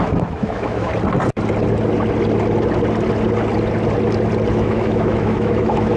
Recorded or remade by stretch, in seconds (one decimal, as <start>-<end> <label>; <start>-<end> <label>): 0.0-0.9 remade; 0.9-4.5 recorded; 4.5-6.0 remade